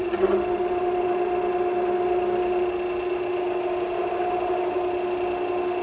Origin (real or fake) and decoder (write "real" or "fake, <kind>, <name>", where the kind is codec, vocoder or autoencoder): real